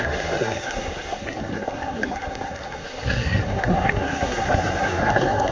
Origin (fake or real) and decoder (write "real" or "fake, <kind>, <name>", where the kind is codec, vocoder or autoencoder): fake, codec, SNAC